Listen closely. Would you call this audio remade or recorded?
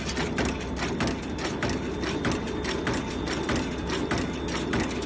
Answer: recorded